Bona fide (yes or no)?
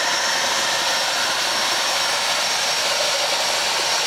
yes